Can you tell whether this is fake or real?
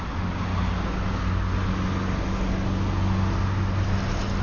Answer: real